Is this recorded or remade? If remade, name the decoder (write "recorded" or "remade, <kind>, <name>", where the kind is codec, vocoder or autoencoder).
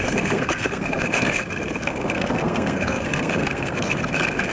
remade, codec, SNAC